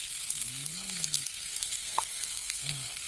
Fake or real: fake